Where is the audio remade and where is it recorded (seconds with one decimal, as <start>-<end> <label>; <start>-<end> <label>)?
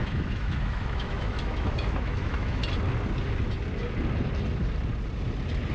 0.0-2.6 remade; 2.6-5.7 recorded